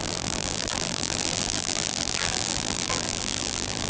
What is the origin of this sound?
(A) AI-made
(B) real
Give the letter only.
A